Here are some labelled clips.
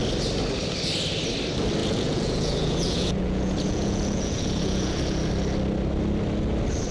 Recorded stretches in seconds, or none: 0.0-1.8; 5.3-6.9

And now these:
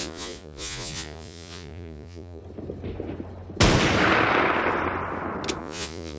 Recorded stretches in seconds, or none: 2.4-5.6